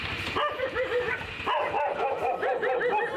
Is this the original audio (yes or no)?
yes